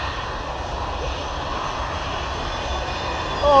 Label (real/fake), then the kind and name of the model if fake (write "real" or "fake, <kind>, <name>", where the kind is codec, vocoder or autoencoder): real